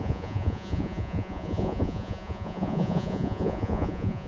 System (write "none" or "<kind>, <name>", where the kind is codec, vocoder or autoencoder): vocoder, Vocos